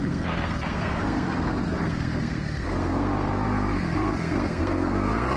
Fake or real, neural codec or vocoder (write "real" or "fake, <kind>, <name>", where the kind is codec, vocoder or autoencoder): fake, codec, SNAC